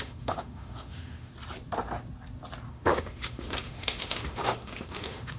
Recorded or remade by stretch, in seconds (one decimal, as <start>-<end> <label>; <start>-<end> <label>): 0.0-1.3 remade; 1.3-2.7 recorded; 2.7-5.4 remade